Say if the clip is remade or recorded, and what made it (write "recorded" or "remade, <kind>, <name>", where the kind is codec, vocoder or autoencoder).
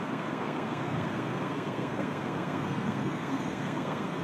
remade, codec, SNAC